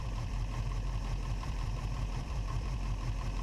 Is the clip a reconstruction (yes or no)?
yes